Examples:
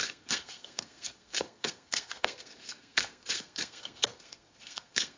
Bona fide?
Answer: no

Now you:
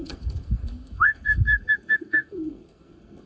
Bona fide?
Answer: no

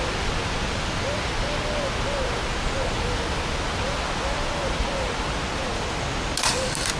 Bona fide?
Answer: yes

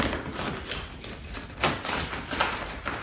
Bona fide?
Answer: yes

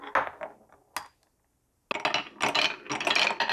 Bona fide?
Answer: yes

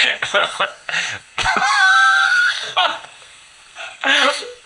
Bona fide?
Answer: no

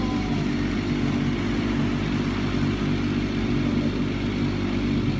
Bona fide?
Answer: yes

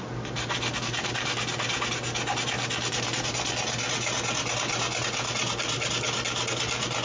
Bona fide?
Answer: yes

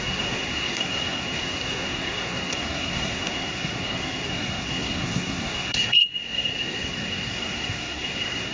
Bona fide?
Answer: no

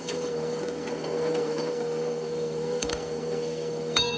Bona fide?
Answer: no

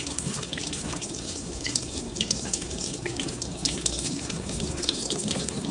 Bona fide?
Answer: no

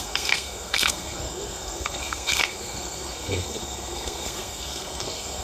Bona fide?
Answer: no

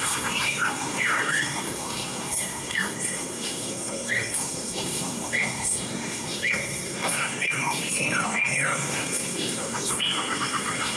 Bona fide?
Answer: no